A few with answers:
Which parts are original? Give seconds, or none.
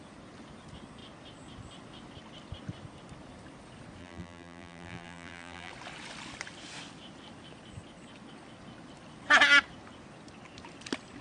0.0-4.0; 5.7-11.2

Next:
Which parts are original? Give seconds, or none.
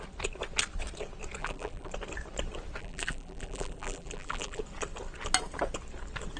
0.0-1.4; 1.9-2.8; 4.6-6.4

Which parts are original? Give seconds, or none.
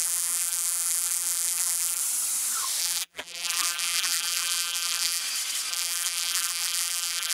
2.0-2.8; 5.2-5.7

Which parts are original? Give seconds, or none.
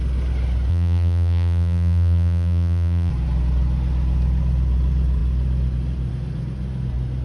0.0-0.7; 3.1-7.2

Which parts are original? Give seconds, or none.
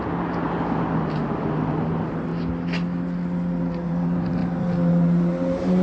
2.3-3.6; 4.4-4.9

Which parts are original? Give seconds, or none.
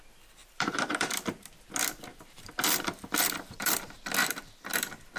0.0-0.4; 1.2-2.1; 3.8-4.2; 4.7-5.2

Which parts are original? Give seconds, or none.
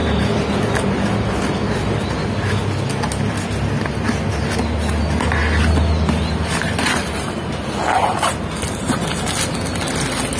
0.0-10.4